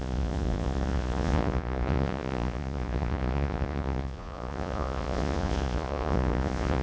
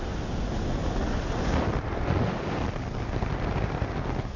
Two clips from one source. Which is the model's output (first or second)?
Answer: first